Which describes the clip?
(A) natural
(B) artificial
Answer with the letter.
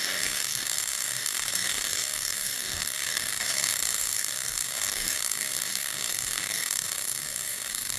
B